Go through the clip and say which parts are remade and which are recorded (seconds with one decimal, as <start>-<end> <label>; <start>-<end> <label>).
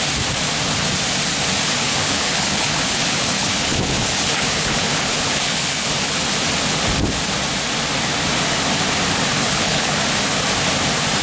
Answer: 0.0-1.8 recorded; 1.8-6.2 remade; 6.2-9.4 recorded; 9.4-10.1 remade; 10.1-11.2 recorded